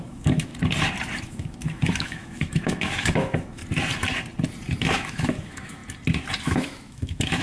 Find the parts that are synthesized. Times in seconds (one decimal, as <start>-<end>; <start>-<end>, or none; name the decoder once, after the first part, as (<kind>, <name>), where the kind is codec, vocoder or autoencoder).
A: 0.0-0.5 (autoencoder, DAC-VAE); 1.2-3.6; 4.8-5.8; 6.4-7.4